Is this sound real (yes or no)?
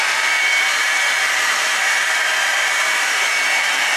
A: no